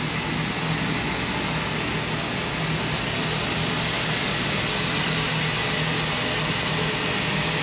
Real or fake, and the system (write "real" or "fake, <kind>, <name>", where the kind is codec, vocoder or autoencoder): real